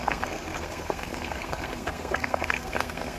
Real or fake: fake